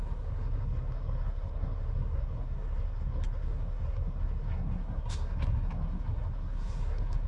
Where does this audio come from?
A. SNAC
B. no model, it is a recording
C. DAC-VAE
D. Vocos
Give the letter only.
A